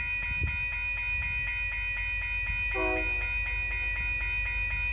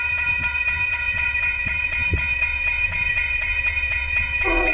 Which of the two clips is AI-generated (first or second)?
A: second